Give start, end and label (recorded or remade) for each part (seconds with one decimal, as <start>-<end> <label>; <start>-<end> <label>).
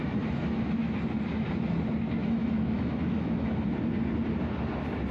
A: 0.0-0.8 remade; 0.8-2.2 recorded; 2.2-3.6 remade; 3.6-5.1 recorded